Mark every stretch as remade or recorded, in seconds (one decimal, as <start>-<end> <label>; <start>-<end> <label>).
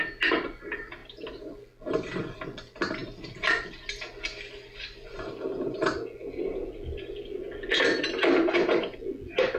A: 0.0-1.0 recorded; 1.0-1.5 remade; 1.5-9.6 recorded